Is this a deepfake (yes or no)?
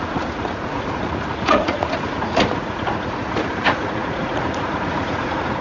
yes